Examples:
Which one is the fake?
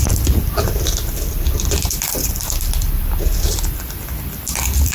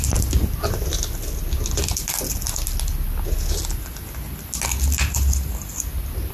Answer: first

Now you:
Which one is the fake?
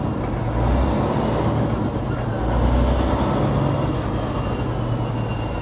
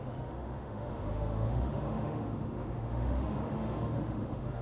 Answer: second